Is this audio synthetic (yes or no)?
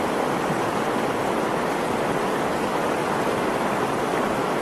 no